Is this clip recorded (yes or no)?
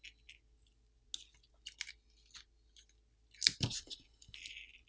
yes